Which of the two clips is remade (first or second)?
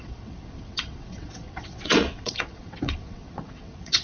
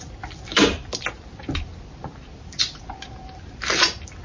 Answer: first